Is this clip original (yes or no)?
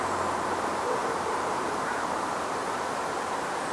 no